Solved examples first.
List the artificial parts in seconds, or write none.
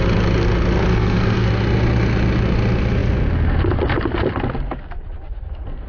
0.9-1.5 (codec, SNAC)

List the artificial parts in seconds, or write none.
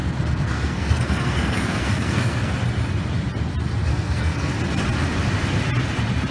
0.0-2.5 (codec, SNAC); 3.9-4.5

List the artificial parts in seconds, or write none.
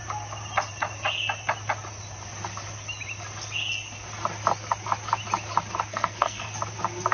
5.9-6.5 (codec, SNAC)